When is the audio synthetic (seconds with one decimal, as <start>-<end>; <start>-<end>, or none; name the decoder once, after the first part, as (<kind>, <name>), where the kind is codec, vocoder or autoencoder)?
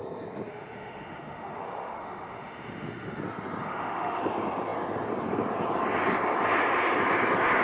0.5-3.2 (autoencoder, DAC-VAE); 3.6-4.2